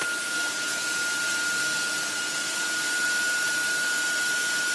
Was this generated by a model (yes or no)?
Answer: no